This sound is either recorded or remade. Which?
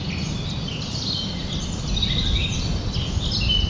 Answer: recorded